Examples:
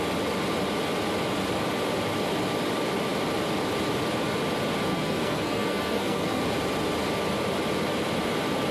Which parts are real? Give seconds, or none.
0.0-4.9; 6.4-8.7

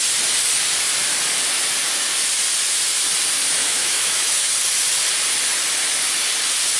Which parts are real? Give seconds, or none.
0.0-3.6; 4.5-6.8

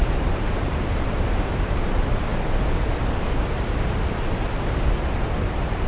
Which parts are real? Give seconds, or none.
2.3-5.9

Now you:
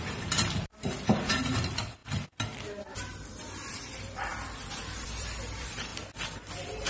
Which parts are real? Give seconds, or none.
2.0-3.7; 4.3-4.8; 5.9-6.9